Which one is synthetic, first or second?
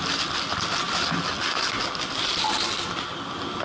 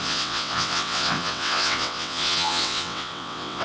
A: second